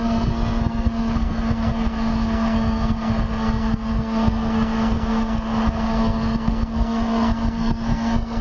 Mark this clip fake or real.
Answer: fake